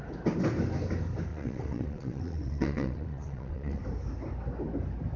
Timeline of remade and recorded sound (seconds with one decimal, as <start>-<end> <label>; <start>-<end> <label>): 0.0-1.3 recorded; 1.3-3.8 remade; 3.8-5.2 recorded